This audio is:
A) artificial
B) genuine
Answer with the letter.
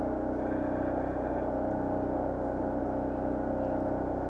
B